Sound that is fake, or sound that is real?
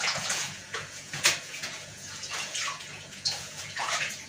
fake